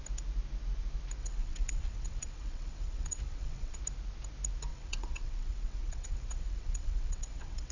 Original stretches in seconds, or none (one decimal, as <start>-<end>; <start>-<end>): 0.0-1.2; 3.8-4.7

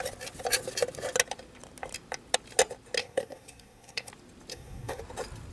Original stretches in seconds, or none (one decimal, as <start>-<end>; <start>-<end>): 0.0-3.0; 4.1-4.5; 5.0-5.5

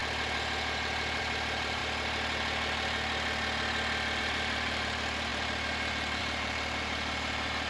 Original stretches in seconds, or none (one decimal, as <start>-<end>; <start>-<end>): 0.0-1.2; 1.8-4.2

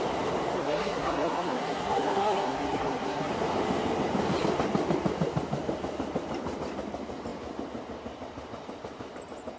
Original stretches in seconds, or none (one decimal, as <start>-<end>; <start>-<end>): 0.0-0.5; 3.3-9.6

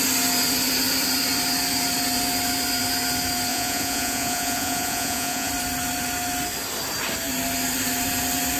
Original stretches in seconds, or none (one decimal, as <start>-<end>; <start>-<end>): 0.0-3.5; 5.5-8.6